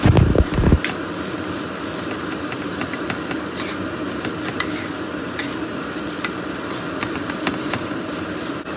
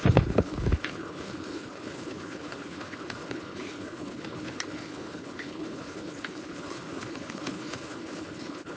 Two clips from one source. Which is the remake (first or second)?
second